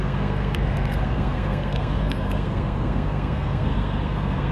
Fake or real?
fake